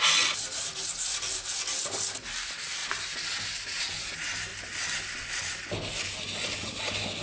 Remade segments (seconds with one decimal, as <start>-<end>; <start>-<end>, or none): 4.5-6.8